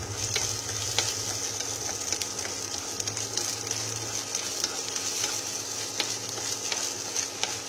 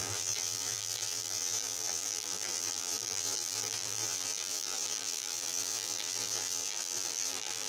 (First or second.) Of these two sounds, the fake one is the second